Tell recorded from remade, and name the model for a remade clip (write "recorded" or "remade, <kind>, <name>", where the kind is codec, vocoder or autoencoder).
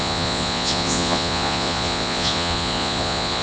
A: remade, vocoder, Vocos